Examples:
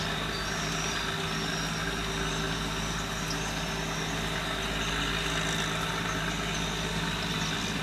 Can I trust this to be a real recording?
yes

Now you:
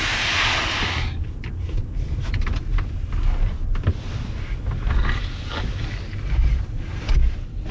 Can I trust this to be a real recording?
yes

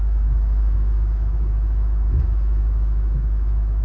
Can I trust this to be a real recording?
no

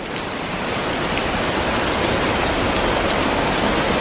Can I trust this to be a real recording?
yes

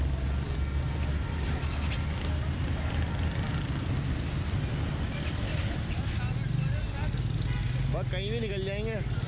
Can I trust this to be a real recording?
yes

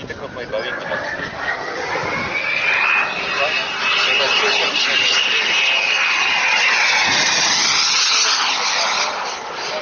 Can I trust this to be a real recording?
yes